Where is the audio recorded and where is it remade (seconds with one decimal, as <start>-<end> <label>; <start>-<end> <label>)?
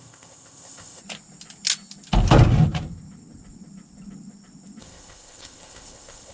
0.0-1.0 remade; 1.0-4.8 recorded; 4.8-6.3 remade